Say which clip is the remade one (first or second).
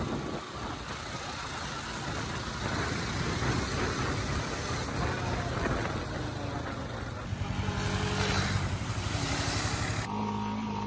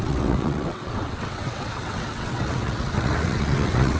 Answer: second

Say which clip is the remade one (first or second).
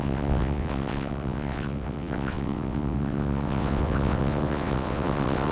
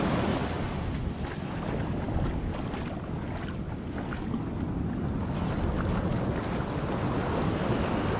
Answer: first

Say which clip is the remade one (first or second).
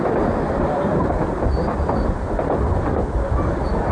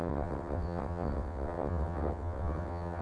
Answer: second